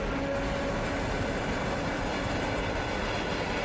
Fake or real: real